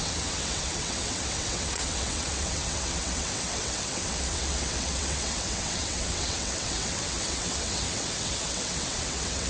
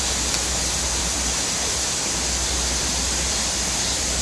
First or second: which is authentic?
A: second